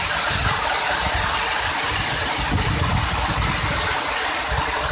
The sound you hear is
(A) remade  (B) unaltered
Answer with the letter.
B